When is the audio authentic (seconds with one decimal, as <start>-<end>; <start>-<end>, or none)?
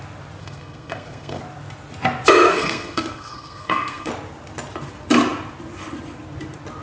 0.0-0.4; 1.4-2.5; 4.1-6.8